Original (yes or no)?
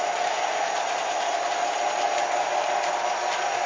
yes